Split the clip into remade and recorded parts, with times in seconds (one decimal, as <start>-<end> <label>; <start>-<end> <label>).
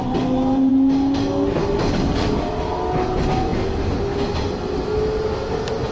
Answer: 0.0-5.9 recorded